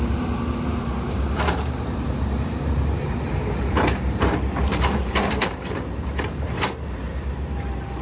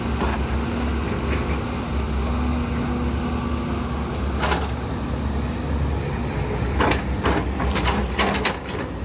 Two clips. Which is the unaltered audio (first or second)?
second